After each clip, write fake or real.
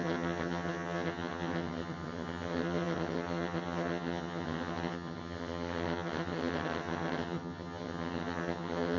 fake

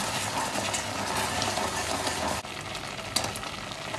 real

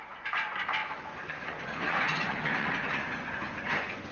fake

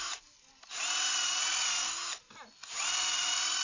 real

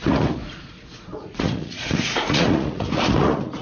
fake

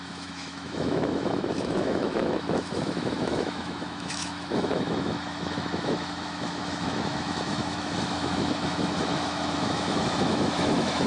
fake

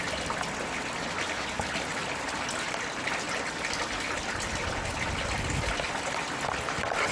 real